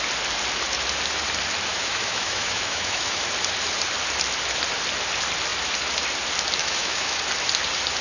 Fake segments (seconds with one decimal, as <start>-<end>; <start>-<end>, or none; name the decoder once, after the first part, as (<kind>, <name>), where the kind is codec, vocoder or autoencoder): 1.7-3.2 (autoencoder, DAC-VAE); 6.6-7.2